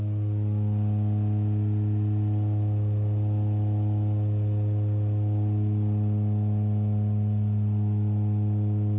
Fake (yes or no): no